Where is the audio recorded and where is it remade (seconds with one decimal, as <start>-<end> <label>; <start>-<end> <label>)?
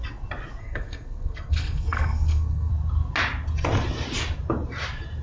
0.0-0.6 recorded; 0.6-2.7 remade; 2.7-5.2 recorded